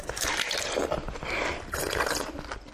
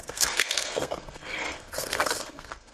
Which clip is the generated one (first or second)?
second